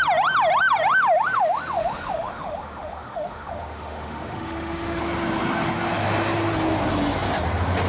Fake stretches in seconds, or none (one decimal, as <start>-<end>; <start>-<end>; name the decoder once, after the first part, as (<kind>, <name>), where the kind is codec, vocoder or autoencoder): 1.8-5.0 (autoencoder, DAC-VAE)